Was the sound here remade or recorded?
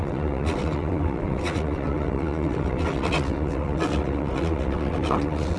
remade